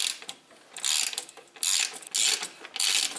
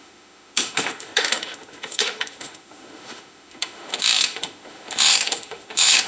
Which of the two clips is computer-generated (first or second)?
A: second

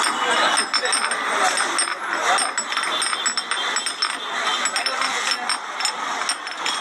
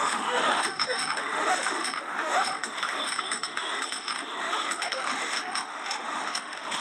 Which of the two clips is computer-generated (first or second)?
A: second